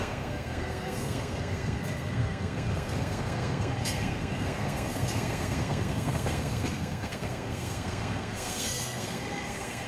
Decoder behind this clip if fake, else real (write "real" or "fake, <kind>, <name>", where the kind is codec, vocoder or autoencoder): fake, codec, SNAC